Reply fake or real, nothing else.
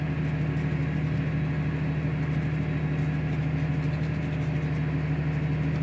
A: real